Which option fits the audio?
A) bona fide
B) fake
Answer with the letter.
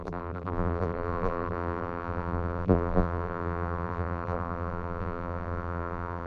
B